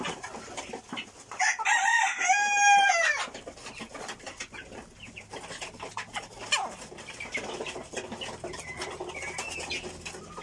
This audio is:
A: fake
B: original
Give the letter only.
B